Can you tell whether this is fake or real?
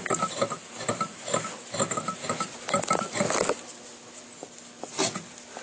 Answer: real